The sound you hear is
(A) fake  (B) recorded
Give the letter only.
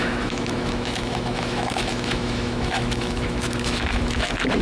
A